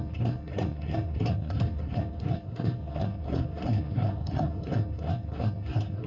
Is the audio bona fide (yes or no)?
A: no